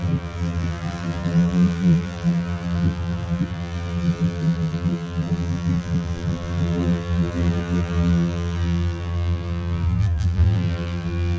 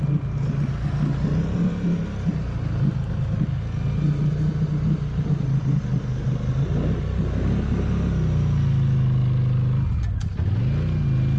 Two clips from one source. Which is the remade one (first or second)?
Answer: first